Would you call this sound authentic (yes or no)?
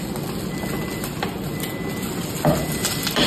yes